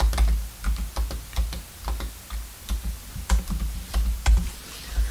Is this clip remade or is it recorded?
recorded